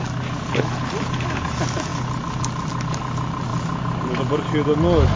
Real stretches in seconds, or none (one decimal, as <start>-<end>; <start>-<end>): 0.0-5.2